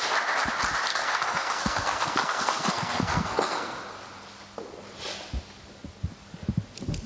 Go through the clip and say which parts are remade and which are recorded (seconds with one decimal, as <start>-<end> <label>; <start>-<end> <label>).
0.0-0.9 recorded; 0.9-3.8 remade; 3.8-7.1 recorded